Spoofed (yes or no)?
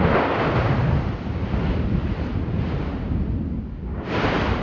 no